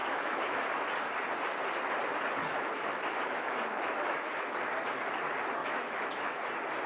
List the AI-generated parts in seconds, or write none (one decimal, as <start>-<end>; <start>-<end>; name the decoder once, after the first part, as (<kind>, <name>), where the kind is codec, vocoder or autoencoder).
0.0-0.6 (autoencoder, DAC-VAE); 2.4-4.6; 5.6-6.4